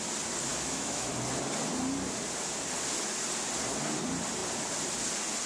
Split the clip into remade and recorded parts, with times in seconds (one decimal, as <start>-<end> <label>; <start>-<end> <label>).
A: 0.0-0.5 recorded; 0.5-1.1 remade; 1.1-5.5 recorded